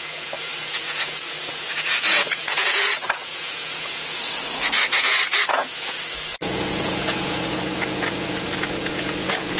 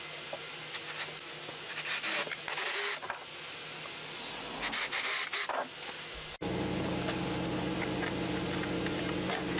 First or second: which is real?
second